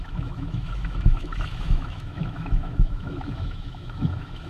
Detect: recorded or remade remade